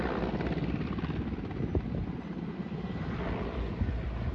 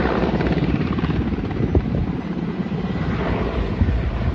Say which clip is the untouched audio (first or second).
first